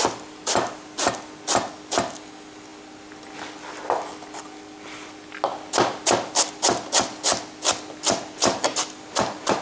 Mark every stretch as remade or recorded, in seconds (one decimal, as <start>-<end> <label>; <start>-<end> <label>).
0.0-9.6 recorded

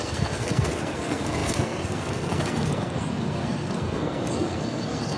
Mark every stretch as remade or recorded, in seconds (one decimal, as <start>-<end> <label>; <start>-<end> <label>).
0.0-5.2 remade